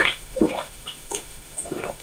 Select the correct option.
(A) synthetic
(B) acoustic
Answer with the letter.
A